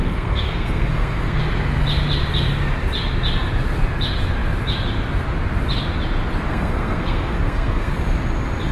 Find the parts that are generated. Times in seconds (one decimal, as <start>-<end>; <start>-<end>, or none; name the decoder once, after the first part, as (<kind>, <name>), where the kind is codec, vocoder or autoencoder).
0.0-1.4 (codec, SNAC); 6.5-7.9